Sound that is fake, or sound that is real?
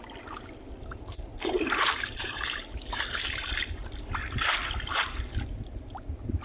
real